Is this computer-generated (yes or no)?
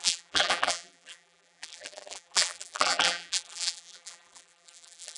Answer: yes